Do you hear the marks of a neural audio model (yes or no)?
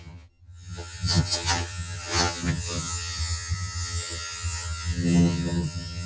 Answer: yes